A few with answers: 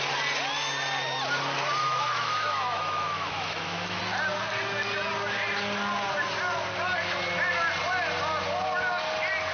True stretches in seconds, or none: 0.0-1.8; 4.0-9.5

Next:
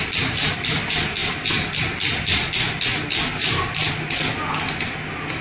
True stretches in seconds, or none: 0.0-5.4

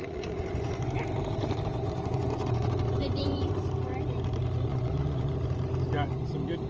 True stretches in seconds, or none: 0.9-1.7; 3.5-4.7; 5.3-6.7

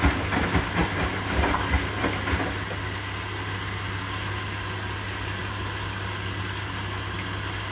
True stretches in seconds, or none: 0.0-7.7

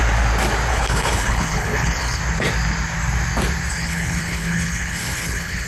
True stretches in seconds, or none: 0.0-0.7; 2.2-3.7